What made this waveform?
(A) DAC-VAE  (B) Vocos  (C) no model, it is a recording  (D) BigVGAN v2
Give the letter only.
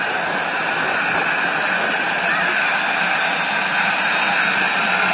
C